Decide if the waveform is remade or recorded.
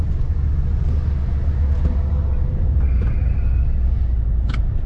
recorded